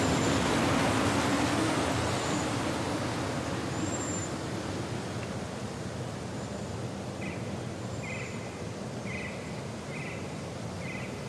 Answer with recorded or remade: recorded